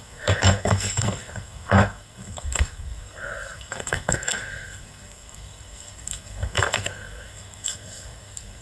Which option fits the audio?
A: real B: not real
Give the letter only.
B